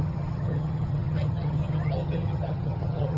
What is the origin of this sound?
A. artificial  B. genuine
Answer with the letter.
A